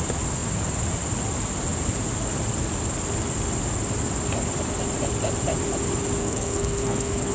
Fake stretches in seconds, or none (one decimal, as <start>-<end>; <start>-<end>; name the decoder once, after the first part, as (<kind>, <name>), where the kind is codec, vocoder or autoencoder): 6.2-7.3 (codec, SNAC)